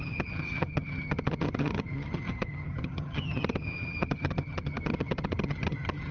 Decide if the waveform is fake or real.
fake